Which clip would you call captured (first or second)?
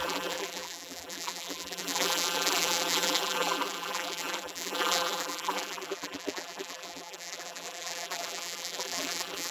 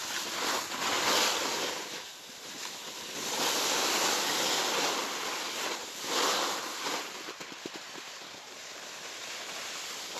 second